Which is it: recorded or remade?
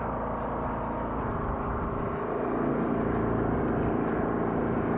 recorded